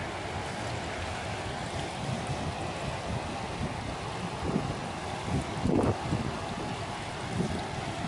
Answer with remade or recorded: recorded